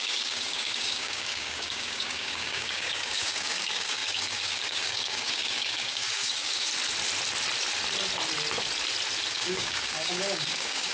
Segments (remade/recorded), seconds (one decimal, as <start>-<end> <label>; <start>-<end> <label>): 0.0-6.7 remade; 6.7-9.3 recorded; 9.3-10.9 remade